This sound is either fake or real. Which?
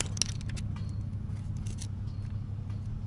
real